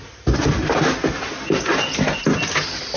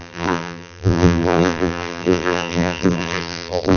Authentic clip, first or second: first